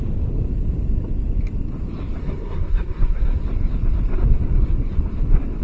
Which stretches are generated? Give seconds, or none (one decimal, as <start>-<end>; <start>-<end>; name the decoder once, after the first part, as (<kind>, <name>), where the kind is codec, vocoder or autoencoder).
2.2-3.4 (codec, SNAC)